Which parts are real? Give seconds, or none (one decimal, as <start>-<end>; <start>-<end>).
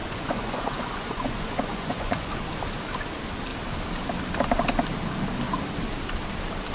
2.3-6.7